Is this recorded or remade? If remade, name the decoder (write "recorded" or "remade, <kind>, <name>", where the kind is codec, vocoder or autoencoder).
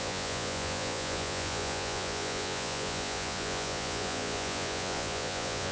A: remade, vocoder, Vocos